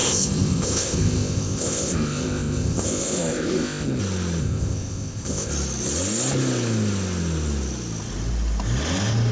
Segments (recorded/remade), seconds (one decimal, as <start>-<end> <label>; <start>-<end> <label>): 0.0-4.0 remade; 4.0-4.4 recorded; 4.4-5.5 remade; 5.5-9.3 recorded

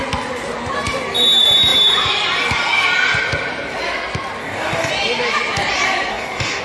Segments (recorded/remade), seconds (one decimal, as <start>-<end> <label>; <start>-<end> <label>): 0.0-4.4 recorded; 4.4-4.9 remade; 4.9-6.1 recorded; 6.1-6.6 remade

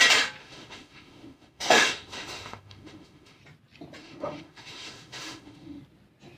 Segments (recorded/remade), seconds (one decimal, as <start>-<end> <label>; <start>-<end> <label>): 0.0-0.4 recorded; 0.4-3.4 remade; 3.4-4.0 recorded; 4.0-5.8 remade; 5.8-6.4 recorded

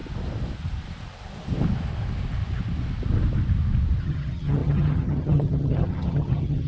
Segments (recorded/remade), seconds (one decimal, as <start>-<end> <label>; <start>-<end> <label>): 0.0-4.0 recorded; 4.0-6.7 remade

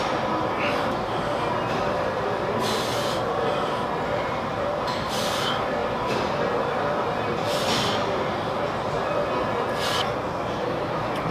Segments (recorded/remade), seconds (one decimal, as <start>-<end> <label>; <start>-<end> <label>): 0.0-4.5 recorded; 4.5-5.2 remade; 5.2-11.3 recorded

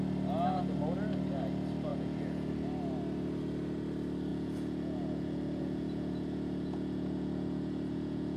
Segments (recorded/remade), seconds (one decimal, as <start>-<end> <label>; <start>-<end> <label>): 0.0-1.9 recorded; 1.9-2.5 remade; 2.5-4.3 recorded; 4.3-8.4 remade

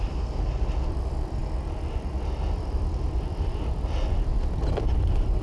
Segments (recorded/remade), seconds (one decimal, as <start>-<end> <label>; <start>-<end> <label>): 0.0-5.4 remade

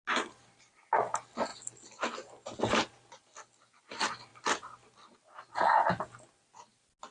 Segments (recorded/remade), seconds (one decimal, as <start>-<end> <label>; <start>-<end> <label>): 0.0-7.1 recorded